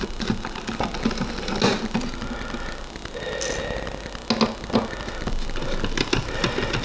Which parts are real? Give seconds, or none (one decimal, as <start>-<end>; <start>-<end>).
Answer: 0.0-6.8